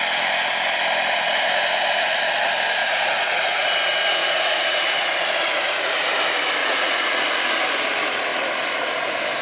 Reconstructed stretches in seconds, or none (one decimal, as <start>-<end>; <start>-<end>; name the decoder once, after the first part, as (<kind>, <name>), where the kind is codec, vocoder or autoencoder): 2.8-3.7 (vocoder, Vocos); 4.2-5.8; 6.6-7.5